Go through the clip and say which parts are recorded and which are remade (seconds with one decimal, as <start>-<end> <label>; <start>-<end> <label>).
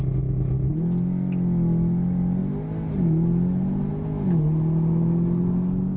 0.0-6.0 recorded